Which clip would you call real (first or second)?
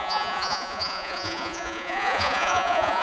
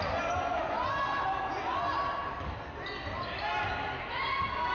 second